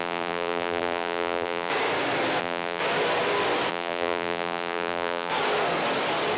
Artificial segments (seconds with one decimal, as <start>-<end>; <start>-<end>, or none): 0.0-1.7; 2.4-2.8; 3.7-5.3